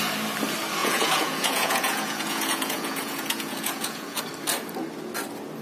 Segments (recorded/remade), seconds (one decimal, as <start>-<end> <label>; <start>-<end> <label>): 0.0-0.8 recorded; 0.8-4.2 remade; 4.2-5.6 recorded